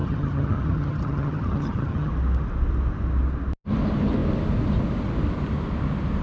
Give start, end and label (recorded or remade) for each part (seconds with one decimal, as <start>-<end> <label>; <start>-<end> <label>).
0.0-2.1 remade; 2.1-6.2 recorded